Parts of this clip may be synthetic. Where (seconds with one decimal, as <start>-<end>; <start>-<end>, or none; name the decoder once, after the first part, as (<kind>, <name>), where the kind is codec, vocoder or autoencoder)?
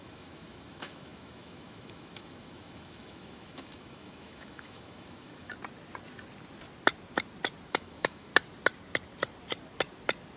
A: 0.0-5.5 (autoencoder, DAC-VAE); 7.7-8.3